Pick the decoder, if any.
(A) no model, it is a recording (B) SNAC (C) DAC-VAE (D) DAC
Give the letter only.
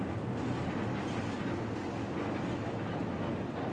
A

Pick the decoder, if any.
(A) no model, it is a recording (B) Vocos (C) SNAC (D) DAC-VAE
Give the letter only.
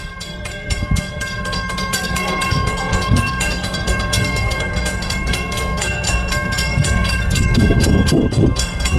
C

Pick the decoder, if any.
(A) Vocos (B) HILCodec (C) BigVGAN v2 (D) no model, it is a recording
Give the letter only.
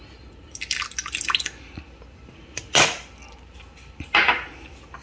D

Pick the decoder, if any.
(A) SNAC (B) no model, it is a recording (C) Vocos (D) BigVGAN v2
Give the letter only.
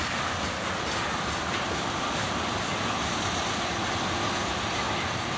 B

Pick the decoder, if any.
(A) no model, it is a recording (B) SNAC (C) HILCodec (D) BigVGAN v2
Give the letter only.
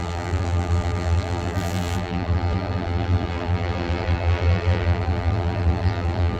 D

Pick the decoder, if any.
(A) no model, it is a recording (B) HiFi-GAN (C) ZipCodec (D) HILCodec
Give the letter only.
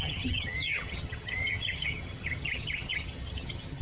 B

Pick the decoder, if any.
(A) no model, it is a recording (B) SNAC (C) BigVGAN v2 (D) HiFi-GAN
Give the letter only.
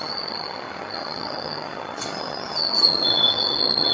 D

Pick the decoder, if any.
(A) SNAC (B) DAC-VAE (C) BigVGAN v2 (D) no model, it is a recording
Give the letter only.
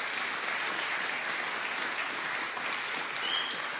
D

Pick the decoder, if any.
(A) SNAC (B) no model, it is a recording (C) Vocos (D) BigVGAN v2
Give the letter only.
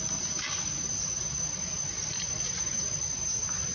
B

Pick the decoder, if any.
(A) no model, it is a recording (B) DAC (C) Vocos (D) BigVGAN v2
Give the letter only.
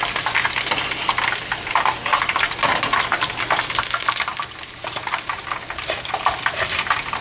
A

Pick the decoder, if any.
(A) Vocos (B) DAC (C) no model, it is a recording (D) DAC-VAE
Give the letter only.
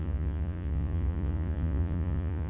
A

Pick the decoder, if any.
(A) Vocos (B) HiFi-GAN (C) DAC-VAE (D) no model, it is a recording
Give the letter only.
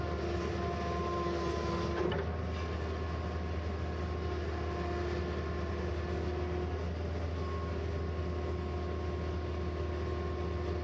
D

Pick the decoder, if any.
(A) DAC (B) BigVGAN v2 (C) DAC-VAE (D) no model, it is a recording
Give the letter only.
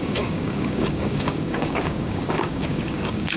A